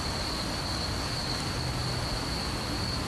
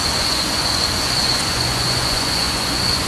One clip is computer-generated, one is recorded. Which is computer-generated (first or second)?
second